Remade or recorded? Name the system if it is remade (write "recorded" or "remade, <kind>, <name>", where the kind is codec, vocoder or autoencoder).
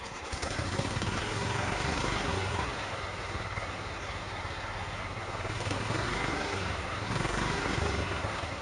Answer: remade, codec, SNAC